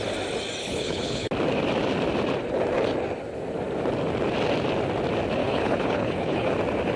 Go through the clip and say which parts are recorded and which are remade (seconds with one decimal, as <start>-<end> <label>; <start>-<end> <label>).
0.0-0.6 recorded; 0.6-1.3 remade; 1.3-5.4 recorded; 5.4-6.5 remade; 6.5-7.0 recorded